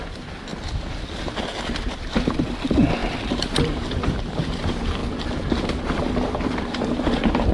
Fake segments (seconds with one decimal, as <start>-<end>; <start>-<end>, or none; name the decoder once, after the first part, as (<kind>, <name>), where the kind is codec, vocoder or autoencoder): 0.0-0.5 (vocoder, BigVGAN v2); 2.3-5.0; 7.1-7.5